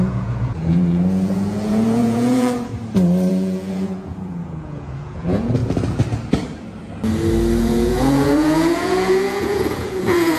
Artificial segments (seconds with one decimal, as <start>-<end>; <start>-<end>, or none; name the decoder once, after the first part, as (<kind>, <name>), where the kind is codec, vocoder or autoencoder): 0.0-2.7 (vocoder, Vocos); 3.3-5.6; 7.6-10.4